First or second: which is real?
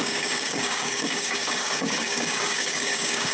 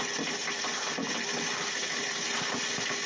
second